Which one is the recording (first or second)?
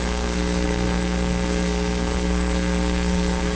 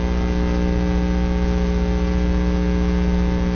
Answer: second